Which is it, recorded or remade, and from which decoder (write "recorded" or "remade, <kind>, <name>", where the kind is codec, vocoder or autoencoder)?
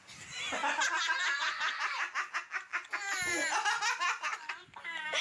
recorded